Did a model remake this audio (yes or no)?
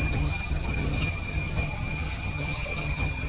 yes